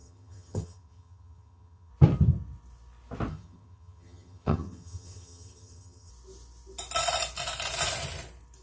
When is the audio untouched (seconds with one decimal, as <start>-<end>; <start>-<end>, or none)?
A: 1.9-3.3; 6.1-8.6